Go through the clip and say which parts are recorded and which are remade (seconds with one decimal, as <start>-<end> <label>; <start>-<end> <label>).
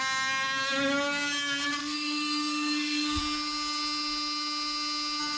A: 0.0-1.8 recorded; 1.8-3.2 remade; 3.2-5.4 recorded